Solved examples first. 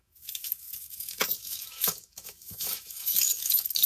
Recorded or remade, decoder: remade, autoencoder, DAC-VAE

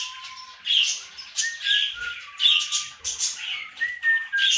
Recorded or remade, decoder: recorded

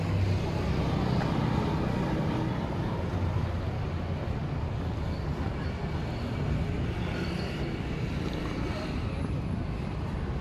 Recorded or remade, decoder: recorded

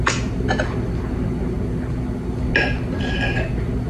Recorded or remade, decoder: recorded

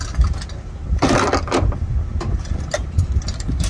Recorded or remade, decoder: recorded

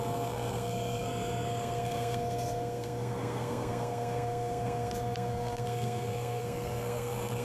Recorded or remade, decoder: remade, codec, SNAC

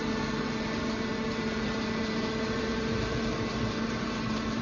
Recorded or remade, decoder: remade, vocoder, BigVGAN v2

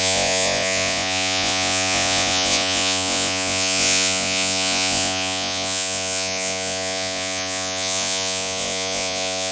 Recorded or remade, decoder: remade, vocoder, Vocos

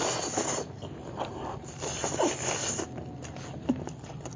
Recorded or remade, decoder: recorded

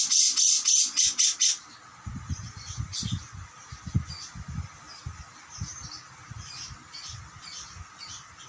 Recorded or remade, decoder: recorded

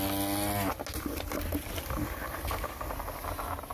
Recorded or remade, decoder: recorded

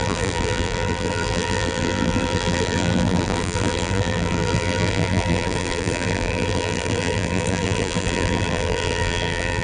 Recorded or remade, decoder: remade, vocoder, BigVGAN v2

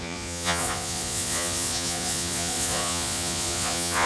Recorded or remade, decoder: remade, vocoder, Vocos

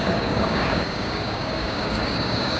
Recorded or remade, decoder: remade, codec, DAC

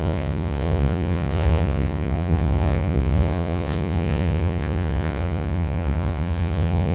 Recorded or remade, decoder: remade, vocoder, Vocos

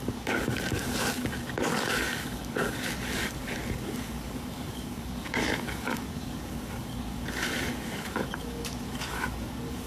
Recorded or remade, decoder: remade, codec, DAC